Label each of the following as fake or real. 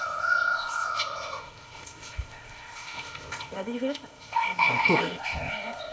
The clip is fake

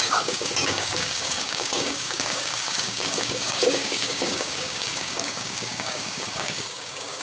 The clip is fake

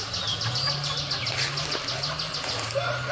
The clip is real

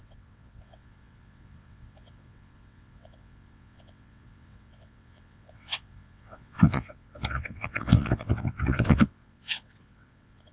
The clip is fake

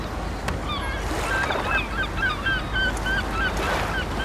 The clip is real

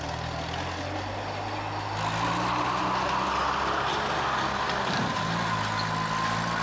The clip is real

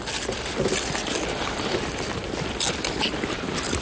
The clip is real